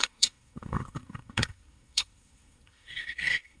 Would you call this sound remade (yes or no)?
yes